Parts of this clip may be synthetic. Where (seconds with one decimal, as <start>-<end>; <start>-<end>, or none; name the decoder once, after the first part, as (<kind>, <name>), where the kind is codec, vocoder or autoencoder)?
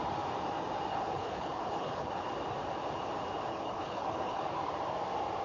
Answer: 0.9-2.3 (codec, HILCodec); 3.5-4.4